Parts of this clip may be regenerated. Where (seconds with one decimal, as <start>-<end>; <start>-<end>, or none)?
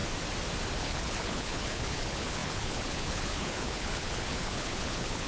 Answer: 0.8-5.3